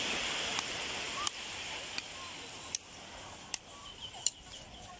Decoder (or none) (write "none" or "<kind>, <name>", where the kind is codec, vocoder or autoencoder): vocoder, BigVGAN v2